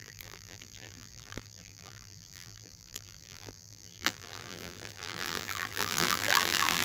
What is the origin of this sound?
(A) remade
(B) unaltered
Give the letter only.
A